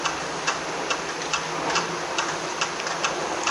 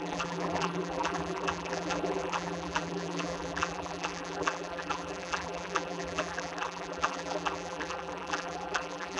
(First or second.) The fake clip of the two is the second